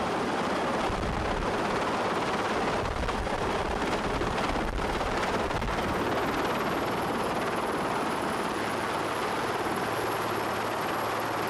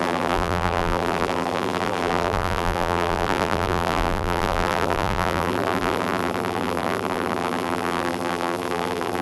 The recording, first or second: first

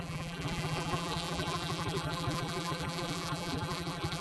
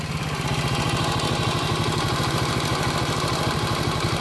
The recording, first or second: second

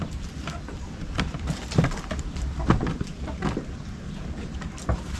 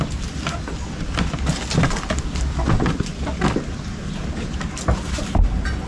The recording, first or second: second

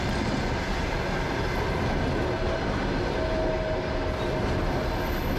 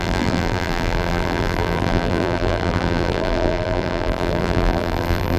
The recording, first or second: first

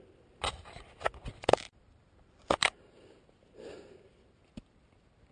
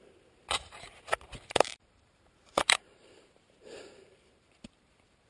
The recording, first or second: first